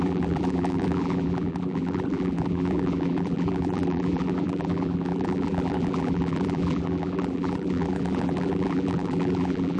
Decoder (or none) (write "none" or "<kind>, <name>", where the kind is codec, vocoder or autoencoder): vocoder, BigVGAN v2